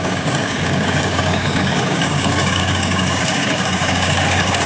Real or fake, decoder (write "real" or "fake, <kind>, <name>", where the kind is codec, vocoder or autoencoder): fake, codec, DAC